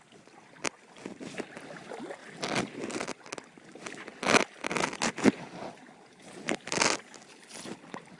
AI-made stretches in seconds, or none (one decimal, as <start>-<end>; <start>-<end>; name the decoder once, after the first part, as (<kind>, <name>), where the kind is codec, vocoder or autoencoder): none